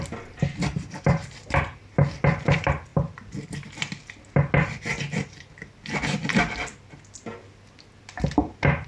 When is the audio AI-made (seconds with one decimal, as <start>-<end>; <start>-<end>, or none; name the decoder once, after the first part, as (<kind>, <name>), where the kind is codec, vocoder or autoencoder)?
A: none